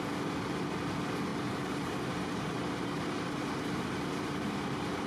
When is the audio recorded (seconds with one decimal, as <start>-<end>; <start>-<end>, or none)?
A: 0.0-1.3; 4.4-5.1

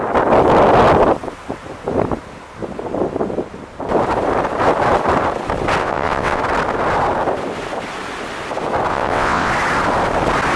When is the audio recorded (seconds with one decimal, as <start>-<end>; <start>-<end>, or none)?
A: 0.0-5.8; 6.4-8.9; 9.5-10.6

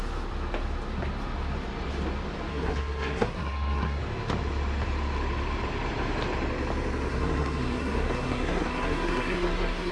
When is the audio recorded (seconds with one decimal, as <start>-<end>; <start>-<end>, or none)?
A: 0.0-2.5; 4.0-7.1

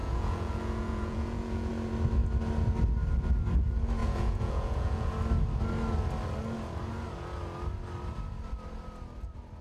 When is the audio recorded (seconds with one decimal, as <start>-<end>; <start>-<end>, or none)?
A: 1.7-4.0; 5.1-9.6

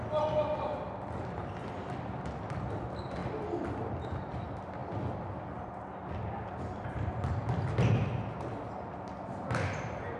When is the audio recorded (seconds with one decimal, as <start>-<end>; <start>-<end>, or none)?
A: 0.0-10.2

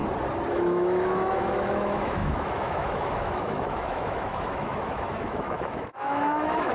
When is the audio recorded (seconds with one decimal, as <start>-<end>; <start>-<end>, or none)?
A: 0.0-0.5

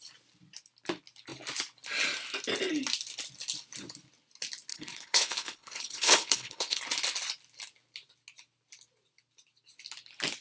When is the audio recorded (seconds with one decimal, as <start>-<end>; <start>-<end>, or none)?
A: 0.0-4.7; 6.8-10.4

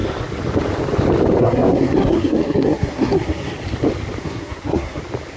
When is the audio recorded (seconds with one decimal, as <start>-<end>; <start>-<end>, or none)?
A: 0.0-1.4; 3.5-4.2; 5.0-5.4